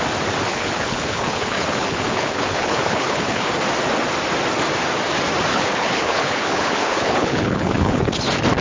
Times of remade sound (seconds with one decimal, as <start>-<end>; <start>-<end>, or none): 0.5-3.5; 5.5-8.0